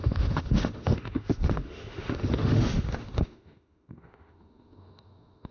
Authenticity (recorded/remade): remade